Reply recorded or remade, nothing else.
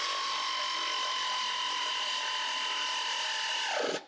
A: remade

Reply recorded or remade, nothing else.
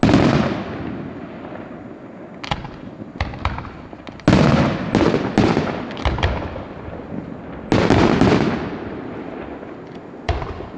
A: recorded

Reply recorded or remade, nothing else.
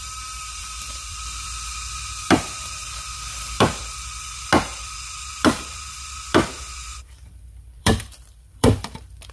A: remade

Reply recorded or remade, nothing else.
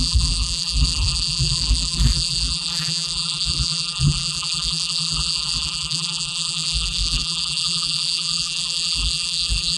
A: remade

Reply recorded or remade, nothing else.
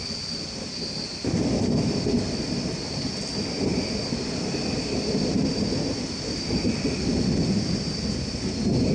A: recorded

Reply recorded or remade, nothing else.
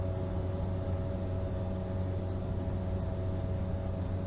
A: recorded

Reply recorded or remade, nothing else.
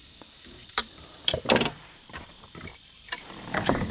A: remade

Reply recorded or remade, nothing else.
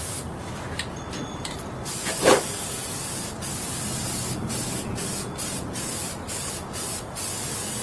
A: recorded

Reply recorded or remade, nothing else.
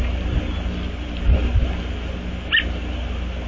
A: recorded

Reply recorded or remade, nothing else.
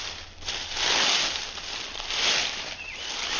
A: recorded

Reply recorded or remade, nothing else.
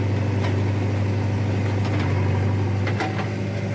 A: recorded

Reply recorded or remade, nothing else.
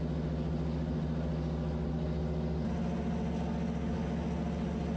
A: recorded